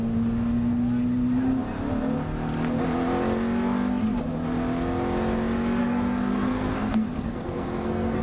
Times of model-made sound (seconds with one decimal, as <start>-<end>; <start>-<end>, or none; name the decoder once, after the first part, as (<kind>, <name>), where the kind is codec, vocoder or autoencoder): 5.8-8.2 (codec, SNAC)